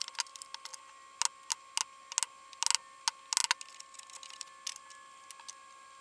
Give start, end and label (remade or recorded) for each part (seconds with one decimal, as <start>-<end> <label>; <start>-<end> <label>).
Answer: 0.0-6.0 recorded